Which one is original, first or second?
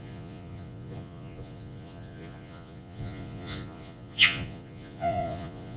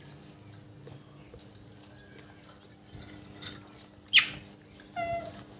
second